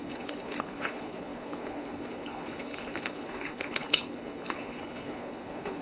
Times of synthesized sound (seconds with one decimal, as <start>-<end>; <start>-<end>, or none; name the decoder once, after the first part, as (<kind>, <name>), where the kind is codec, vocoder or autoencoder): 0.0-5.8 (codec, HILCodec)